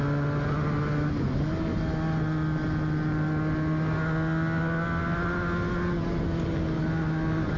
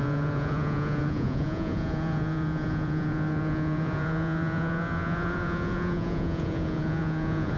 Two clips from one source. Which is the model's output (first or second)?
second